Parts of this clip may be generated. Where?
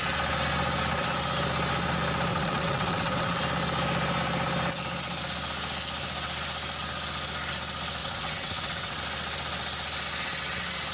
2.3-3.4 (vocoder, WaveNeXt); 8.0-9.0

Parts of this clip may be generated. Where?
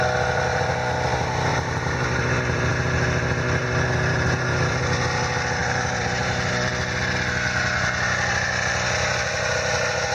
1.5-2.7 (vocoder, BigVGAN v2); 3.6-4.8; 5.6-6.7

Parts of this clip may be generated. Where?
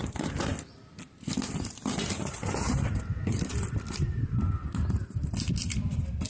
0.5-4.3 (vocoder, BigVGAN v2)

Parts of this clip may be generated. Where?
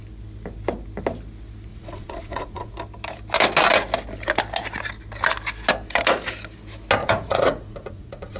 1.7-2.7 (vocoder, Vocos); 7.0-8.4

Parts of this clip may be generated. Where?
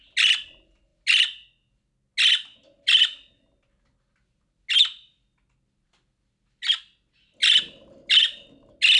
none